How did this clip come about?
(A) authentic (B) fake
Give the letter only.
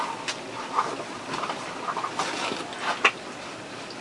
A